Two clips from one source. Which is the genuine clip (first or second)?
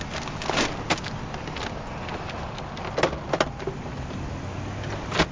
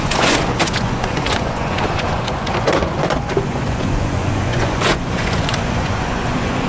first